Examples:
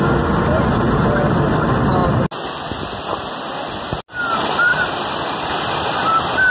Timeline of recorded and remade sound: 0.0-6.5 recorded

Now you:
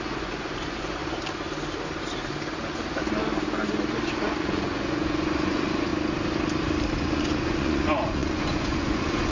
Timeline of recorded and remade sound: 0.0-1.0 remade; 1.0-4.4 recorded; 4.4-5.9 remade; 5.9-7.0 recorded; 7.0-9.3 remade

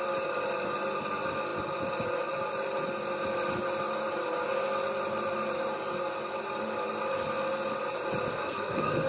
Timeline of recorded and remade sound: 0.0-8.3 recorded; 8.3-9.1 remade

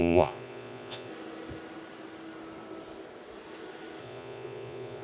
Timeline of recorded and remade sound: 0.0-1.1 remade; 1.1-4.0 recorded; 4.0-5.0 remade

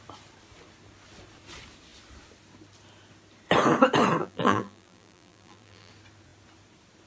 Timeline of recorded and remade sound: 0.0-4.2 recorded; 4.2-5.9 remade; 5.9-7.1 recorded

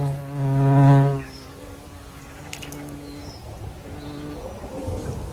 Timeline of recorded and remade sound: 0.0-3.2 remade; 3.2-4.8 recorded; 4.8-5.3 remade